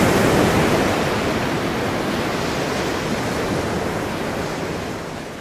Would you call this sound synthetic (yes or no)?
no